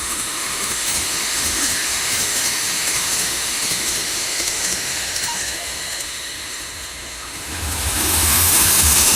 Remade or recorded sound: remade